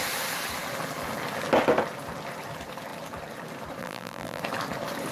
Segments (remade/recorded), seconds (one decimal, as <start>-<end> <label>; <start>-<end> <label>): 0.0-3.8 recorded; 3.8-4.4 remade; 4.4-5.1 recorded